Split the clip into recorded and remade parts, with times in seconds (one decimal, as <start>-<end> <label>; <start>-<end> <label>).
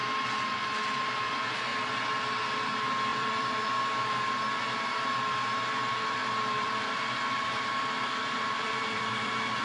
0.0-3.1 recorded; 3.1-4.9 remade; 4.9-6.2 recorded; 6.2-9.6 remade